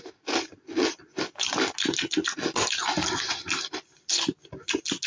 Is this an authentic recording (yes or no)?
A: yes